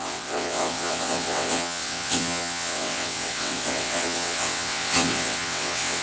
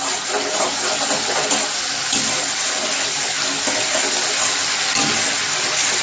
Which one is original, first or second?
second